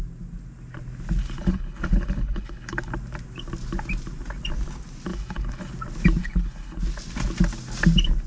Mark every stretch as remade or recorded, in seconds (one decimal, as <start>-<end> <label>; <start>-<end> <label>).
0.0-1.2 recorded; 1.2-2.9 remade; 2.9-5.1 recorded; 5.1-5.7 remade; 5.7-6.2 recorded; 6.2-6.8 remade; 6.8-8.3 recorded